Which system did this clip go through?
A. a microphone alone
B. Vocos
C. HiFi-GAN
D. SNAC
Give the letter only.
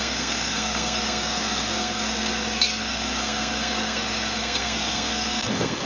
D